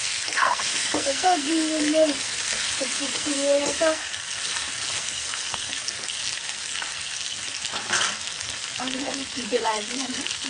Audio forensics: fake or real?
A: fake